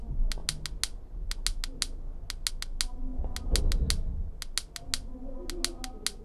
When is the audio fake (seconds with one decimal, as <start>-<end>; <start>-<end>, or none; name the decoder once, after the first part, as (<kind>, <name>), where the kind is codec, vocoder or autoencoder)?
none